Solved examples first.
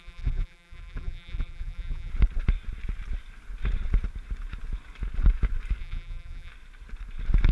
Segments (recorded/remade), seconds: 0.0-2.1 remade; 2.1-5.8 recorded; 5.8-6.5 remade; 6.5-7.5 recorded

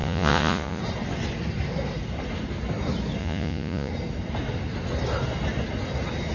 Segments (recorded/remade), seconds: 0.0-0.8 remade; 0.8-3.2 recorded; 3.2-3.9 remade; 3.9-6.3 recorded

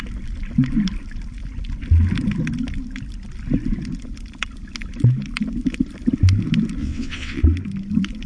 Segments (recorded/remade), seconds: 0.0-6.8 recorded; 6.8-7.4 remade; 7.4-8.3 recorded

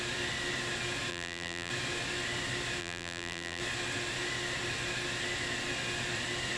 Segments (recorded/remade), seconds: 0.0-1.1 recorded; 1.1-1.7 remade; 1.7-2.8 recorded; 2.8-3.6 remade; 3.6-6.6 recorded